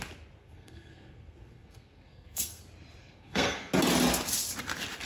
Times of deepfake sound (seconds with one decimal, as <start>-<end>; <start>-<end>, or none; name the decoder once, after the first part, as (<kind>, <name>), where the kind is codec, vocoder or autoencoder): 0.4-2.6 (codec, SNAC); 3.0-3.7